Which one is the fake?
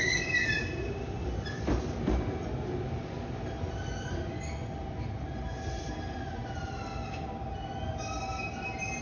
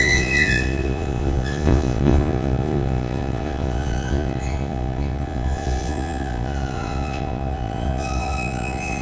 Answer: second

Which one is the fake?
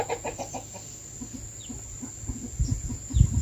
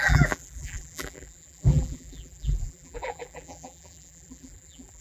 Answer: second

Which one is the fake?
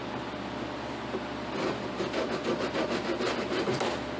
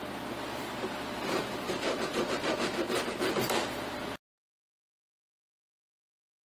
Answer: second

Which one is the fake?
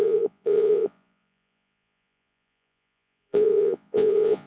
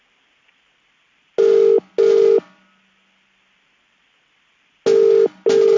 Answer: first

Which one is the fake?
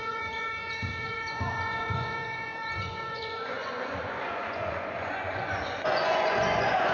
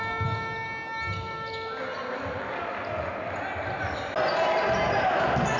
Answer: first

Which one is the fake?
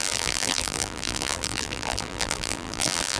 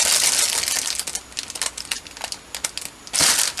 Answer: first